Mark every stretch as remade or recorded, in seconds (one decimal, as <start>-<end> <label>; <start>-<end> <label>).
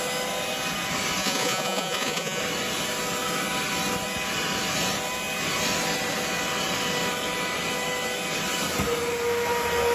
0.0-1.2 recorded; 1.2-2.4 remade; 2.4-9.9 recorded